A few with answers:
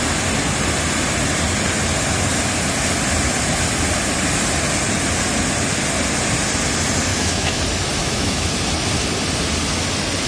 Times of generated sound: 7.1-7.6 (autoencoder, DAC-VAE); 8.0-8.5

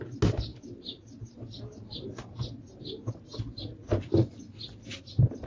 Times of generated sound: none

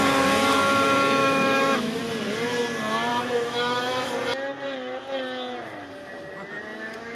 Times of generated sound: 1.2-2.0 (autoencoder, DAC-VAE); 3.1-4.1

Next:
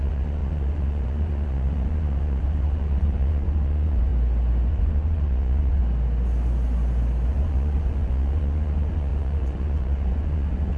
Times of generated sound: 0.0-4.1 (vocoder, Vocos); 4.7-5.8; 7.3-10.8